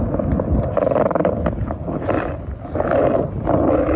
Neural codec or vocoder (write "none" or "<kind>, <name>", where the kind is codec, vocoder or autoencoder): none